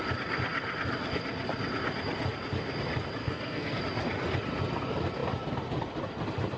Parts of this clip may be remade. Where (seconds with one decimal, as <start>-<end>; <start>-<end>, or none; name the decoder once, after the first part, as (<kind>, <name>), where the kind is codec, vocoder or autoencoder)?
3.2-3.8 (codec, SNAC)